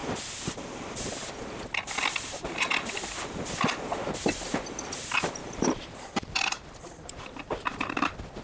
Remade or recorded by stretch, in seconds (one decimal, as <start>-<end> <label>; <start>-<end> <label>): 0.0-1.3 remade; 1.3-5.4 recorded; 5.4-7.9 remade; 7.9-8.4 recorded